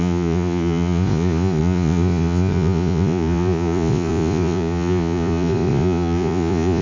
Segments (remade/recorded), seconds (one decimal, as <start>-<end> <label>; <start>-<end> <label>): 0.0-6.8 remade